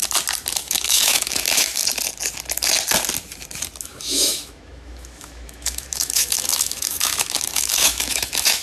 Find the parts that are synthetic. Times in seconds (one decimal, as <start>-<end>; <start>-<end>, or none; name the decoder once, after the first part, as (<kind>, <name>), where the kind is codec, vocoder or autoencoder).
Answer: 0.5-1.8 (autoencoder, DAC-VAE); 3.8-8.6